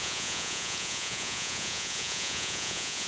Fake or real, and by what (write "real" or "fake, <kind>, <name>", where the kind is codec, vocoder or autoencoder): fake, vocoder, Vocos